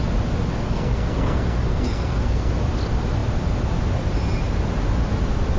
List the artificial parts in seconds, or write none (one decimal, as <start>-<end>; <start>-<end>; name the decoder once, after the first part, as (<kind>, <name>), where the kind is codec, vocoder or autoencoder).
0.6-2.5 (codec, SNAC)